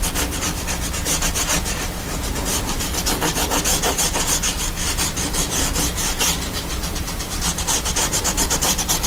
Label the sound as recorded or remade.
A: remade